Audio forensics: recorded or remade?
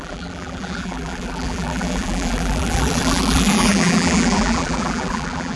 remade